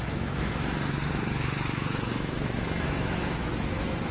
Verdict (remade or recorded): remade